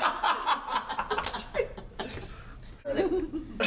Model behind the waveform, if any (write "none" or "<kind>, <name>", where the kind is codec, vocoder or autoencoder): none